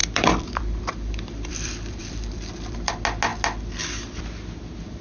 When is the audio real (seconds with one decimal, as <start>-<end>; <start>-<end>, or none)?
2.9-5.0